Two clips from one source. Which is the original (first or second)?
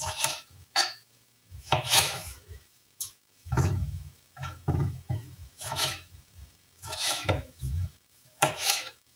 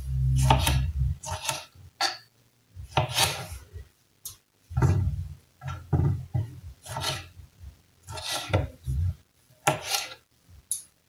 second